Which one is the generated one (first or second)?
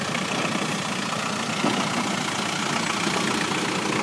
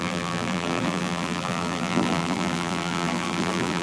second